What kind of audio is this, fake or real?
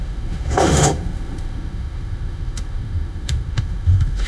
fake